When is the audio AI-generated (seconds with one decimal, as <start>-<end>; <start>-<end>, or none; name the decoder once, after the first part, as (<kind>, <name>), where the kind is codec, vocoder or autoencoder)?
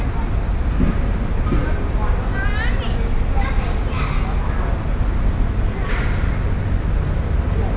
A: none